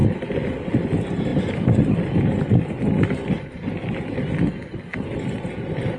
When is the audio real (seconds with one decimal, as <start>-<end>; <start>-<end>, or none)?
0.0-6.0